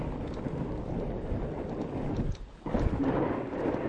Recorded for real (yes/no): yes